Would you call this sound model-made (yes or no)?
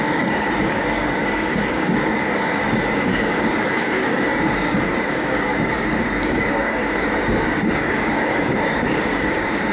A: yes